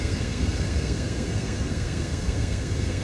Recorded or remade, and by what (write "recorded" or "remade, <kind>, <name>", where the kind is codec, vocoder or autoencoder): remade, codec, SNAC